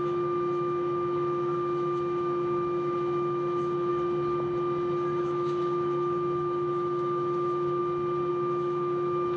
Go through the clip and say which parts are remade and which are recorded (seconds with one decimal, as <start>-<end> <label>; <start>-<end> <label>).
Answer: 0.0-3.9 remade; 3.9-5.2 recorded; 5.2-7.8 remade; 7.8-8.3 recorded; 8.3-9.4 remade